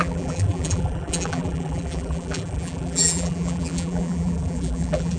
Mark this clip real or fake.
fake